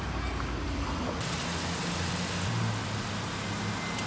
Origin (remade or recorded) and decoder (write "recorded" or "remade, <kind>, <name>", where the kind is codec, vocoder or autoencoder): recorded